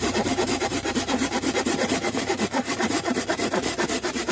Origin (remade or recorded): remade